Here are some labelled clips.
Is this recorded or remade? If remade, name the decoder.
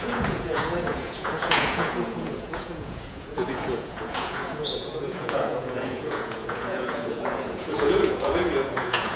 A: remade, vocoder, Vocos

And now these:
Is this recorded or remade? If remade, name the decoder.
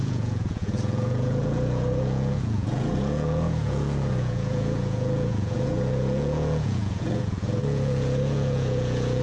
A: remade, vocoder, Vocos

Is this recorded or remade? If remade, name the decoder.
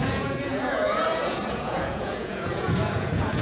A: remade, vocoder, Vocos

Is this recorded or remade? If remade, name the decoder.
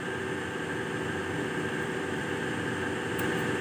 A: recorded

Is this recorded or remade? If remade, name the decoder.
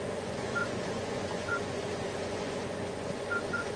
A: remade, vocoder, Vocos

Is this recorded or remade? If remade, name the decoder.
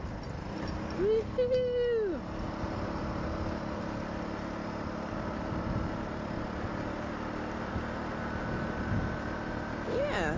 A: recorded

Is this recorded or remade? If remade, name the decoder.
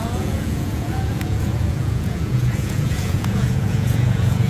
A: remade, vocoder, Vocos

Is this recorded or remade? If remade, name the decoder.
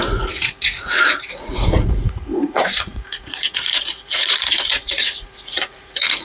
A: remade, vocoder, Vocos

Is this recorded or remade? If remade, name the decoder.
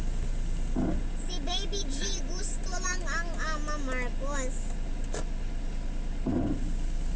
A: recorded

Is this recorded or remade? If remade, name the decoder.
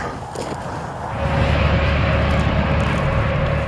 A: recorded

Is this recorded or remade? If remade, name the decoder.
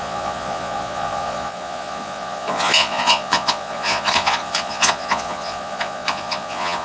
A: remade, vocoder, Vocos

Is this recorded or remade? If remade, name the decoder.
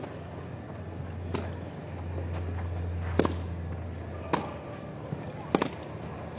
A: recorded